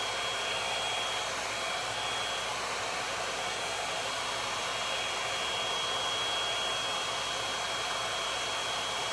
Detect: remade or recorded recorded